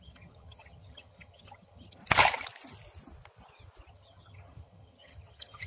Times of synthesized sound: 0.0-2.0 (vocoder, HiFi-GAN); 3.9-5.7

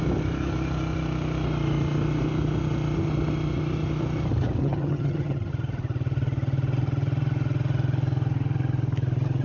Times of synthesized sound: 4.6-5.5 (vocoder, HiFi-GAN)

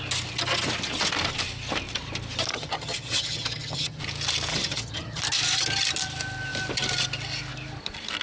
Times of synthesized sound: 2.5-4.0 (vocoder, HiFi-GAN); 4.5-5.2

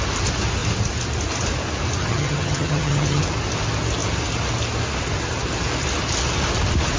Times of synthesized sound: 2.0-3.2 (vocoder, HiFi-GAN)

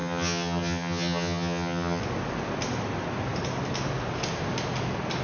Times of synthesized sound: 0.0-2.0 (vocoder, HiFi-GAN)